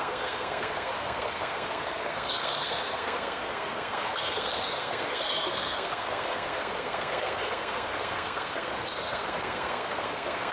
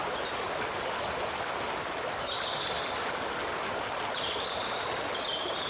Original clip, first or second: second